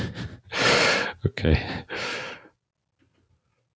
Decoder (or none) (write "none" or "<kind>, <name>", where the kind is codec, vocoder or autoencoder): none